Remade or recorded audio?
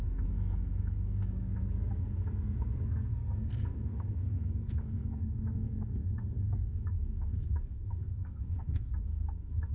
remade